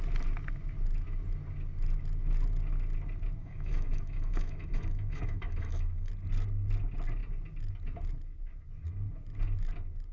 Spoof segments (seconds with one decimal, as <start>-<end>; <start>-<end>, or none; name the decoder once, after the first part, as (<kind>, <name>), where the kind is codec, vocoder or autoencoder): 3.4-6.1 (autoencoder, DAC-VAE)